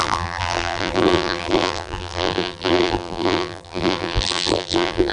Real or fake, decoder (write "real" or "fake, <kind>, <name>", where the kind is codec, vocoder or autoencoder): fake, vocoder, BigVGAN v2